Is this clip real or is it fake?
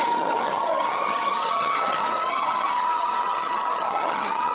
fake